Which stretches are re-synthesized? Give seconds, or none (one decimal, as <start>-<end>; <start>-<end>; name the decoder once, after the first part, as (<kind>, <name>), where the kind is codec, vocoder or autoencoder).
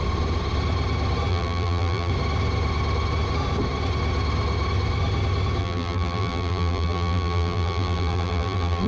1.3-2.1 (vocoder, BigVGAN v2); 5.6-8.9